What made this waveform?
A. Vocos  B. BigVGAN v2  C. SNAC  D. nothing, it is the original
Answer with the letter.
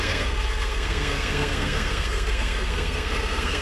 C